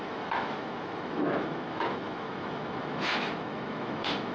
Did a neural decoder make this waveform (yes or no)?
yes